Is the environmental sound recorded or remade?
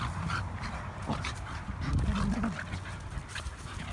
recorded